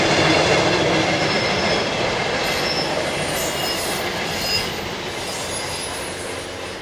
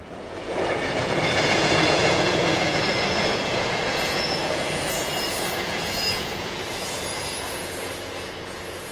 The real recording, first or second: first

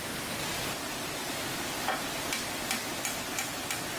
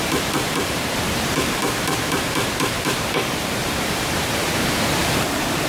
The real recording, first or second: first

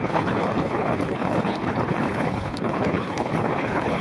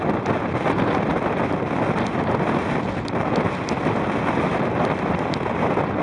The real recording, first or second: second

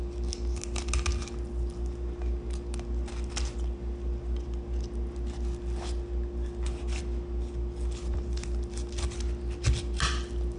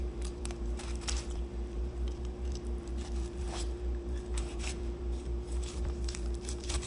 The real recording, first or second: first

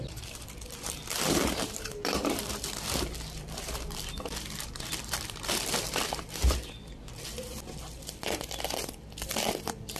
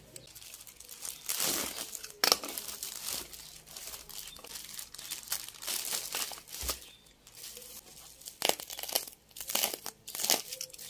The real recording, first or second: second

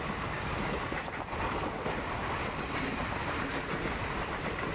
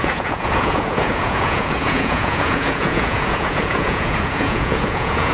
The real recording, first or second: first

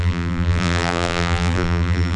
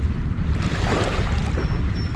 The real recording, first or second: second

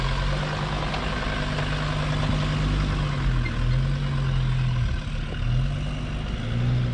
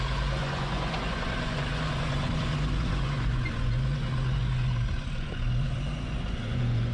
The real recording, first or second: first